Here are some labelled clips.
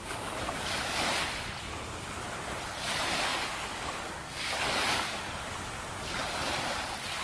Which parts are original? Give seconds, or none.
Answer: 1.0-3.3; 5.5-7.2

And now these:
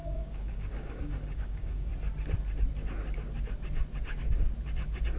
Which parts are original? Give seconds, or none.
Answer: 1.9-5.2

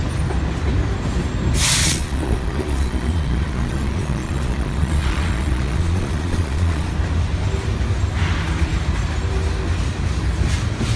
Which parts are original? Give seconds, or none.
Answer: 0.0-1.8; 6.9-11.0

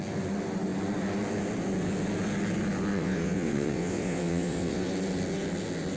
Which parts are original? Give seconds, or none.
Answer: 0.0-2.9; 4.9-6.0

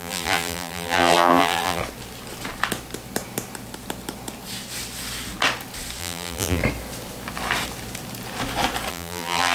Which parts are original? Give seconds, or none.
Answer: 1.8-6.0; 6.6-8.9

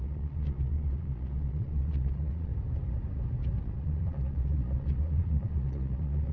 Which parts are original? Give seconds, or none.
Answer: 2.5-3.6

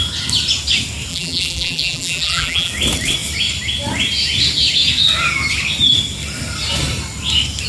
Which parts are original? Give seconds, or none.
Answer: 0.0-1.1; 2.7-7.7